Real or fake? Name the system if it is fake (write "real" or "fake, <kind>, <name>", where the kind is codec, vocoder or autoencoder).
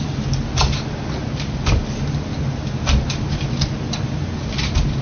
real